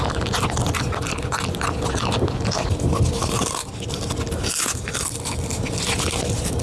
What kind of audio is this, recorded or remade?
recorded